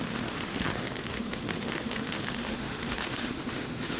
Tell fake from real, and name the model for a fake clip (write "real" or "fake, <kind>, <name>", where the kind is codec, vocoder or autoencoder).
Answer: fake, autoencoder, DAC-VAE